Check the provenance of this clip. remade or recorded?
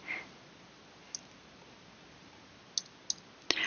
recorded